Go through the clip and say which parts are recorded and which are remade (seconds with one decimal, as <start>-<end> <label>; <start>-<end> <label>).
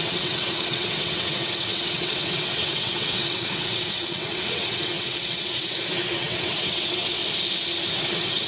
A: 0.0-7.2 remade; 7.2-8.0 recorded; 8.0-8.5 remade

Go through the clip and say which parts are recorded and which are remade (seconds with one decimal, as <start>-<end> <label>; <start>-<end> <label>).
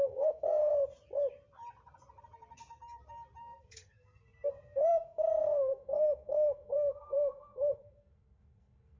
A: 0.0-0.7 remade; 0.7-3.4 recorded; 3.4-9.0 remade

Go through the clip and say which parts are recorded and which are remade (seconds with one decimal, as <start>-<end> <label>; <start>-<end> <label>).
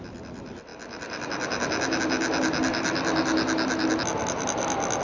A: 0.0-5.0 recorded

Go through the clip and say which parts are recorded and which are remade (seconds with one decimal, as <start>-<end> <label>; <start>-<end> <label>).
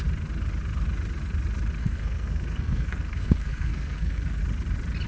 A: 0.0-1.8 recorded; 1.8-4.4 remade; 4.4-5.1 recorded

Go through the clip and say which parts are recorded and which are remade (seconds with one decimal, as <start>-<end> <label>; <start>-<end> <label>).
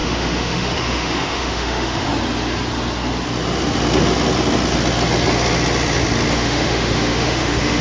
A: 0.0-2.1 remade; 2.1-6.3 recorded; 6.3-7.8 remade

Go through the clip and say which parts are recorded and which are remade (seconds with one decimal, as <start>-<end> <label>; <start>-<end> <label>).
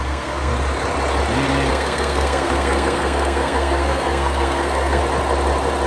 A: 0.0-0.5 remade; 0.5-1.7 recorded; 1.7-5.0 remade; 5.0-5.9 recorded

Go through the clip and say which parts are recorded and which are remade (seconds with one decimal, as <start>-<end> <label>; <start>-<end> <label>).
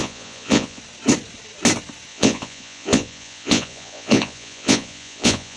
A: 0.0-0.8 remade; 0.8-2.1 recorded; 2.1-5.6 remade